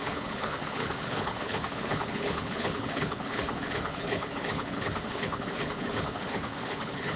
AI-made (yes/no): yes